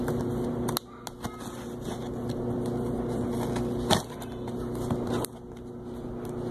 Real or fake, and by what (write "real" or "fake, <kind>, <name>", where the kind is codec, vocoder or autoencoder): real